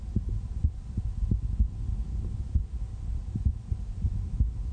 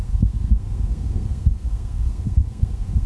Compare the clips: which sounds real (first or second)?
first